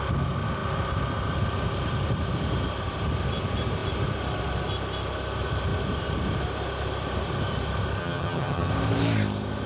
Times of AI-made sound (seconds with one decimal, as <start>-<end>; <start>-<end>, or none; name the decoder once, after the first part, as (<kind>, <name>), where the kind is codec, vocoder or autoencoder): 8.0-8.7 (vocoder, HiFi-GAN)